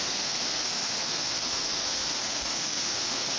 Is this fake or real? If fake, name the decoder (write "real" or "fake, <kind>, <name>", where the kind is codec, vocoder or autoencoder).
fake, codec, SNAC